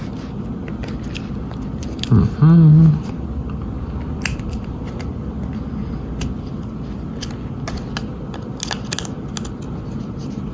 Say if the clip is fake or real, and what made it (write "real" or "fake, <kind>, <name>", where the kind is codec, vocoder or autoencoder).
real